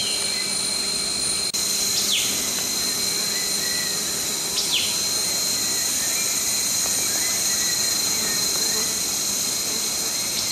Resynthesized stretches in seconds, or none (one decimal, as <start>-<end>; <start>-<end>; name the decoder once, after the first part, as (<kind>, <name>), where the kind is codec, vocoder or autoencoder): 0.0-0.5 (vocoder, BigVGAN v2)